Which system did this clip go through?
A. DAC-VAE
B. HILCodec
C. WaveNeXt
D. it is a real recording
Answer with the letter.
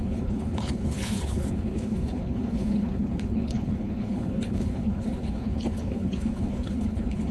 B